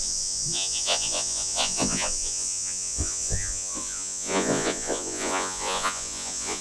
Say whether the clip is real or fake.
fake